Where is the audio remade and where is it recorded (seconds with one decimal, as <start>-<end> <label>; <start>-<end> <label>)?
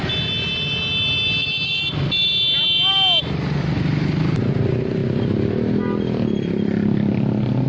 0.0-7.7 recorded